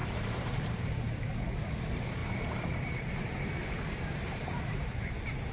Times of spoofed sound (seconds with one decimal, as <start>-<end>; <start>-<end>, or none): 0.0-1.5; 2.2-5.5